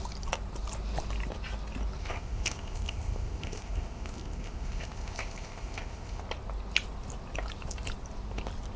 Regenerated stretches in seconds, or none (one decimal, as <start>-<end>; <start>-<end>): 2.0-6.2